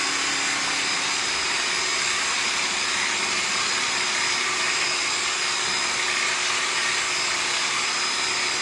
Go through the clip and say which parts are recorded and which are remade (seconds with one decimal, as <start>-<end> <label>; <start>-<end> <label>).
0.0-8.6 recorded